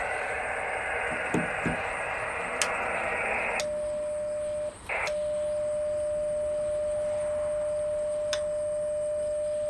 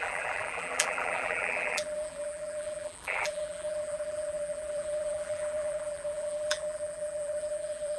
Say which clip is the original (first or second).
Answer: first